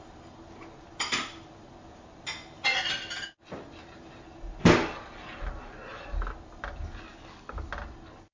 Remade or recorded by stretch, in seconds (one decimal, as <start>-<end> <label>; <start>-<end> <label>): 0.0-7.1 recorded; 7.1-7.7 remade; 7.7-8.3 recorded